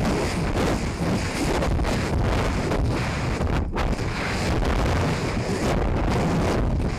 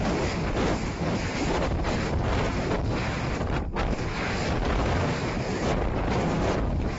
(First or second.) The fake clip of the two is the second